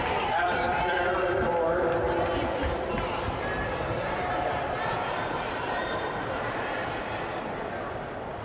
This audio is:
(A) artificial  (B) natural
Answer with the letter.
A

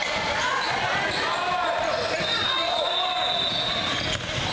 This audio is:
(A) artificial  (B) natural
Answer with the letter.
B